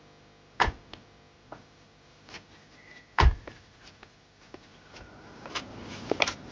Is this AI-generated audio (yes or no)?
no